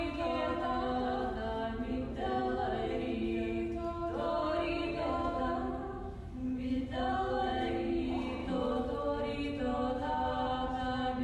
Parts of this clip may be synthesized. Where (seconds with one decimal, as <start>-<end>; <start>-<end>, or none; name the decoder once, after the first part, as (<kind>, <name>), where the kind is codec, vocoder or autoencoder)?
4.4-8.0 (autoencoder, DAC-VAE); 8.4-9.2